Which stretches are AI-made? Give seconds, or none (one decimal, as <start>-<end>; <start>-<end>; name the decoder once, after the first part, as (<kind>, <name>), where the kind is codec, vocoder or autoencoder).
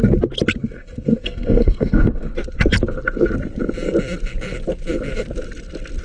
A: 0.6-2.3 (codec, SNAC)